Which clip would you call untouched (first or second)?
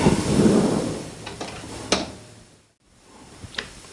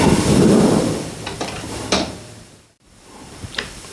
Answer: first